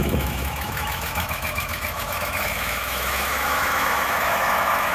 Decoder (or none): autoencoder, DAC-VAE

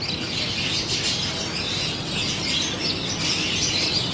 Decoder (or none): none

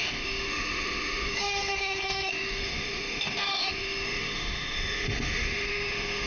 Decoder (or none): autoencoder, DAC-VAE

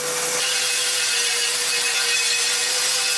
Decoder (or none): none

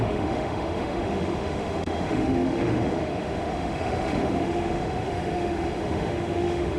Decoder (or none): autoencoder, DAC-VAE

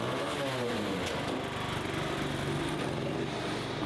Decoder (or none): none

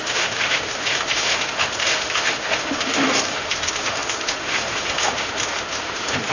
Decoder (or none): autoencoder, DAC-VAE